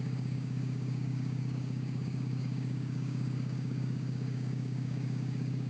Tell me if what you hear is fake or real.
fake